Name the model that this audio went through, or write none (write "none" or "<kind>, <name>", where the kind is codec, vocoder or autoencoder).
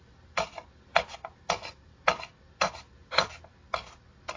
none